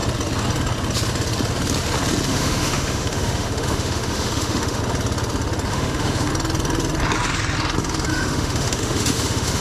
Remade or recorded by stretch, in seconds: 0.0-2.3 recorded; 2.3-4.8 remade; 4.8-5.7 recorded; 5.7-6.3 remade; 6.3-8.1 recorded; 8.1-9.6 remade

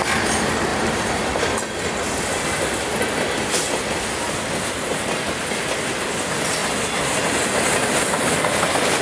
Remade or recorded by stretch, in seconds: 0.0-0.7 recorded; 0.7-1.3 remade; 1.3-9.0 recorded

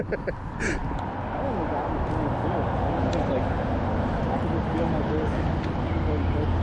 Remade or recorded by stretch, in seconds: 0.0-6.6 recorded

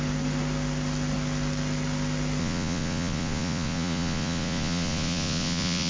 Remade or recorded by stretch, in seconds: 0.0-2.4 recorded; 2.4-5.9 remade

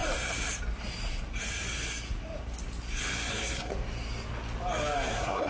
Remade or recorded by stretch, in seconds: 0.0-3.3 recorded; 3.3-3.7 remade; 3.7-5.1 recorded; 5.1-5.5 remade